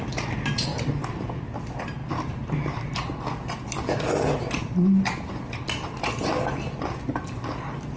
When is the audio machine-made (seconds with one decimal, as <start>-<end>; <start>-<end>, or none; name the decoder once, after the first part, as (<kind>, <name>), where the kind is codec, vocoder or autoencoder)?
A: none